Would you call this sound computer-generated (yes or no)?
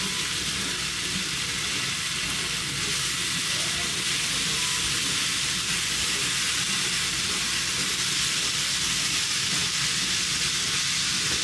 no